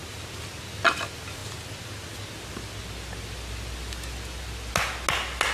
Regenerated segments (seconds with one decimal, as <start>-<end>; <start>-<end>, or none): none